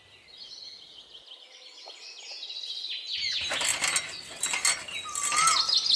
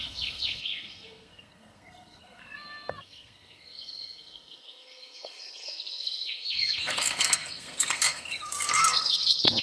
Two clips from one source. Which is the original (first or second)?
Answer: first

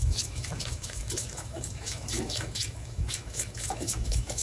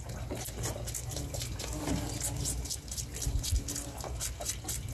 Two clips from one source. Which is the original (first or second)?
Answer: second